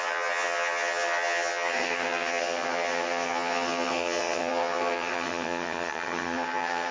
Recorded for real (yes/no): no